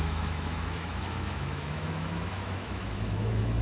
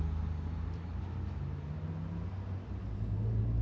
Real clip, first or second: second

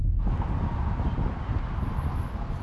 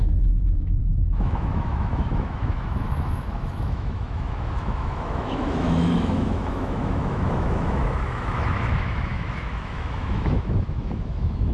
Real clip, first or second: first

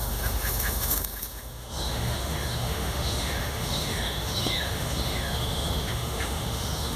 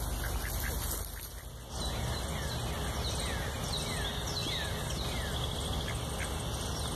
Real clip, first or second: second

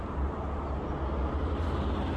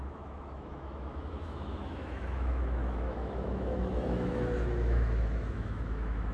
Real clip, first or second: first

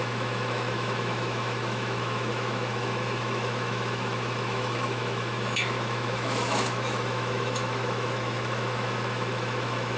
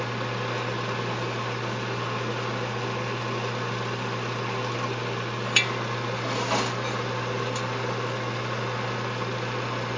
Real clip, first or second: second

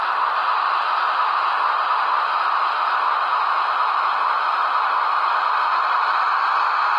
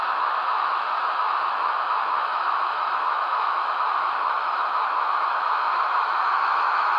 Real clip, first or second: first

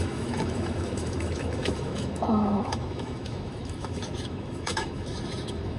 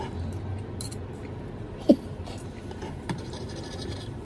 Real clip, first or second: second